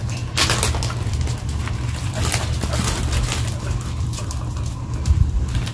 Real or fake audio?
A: real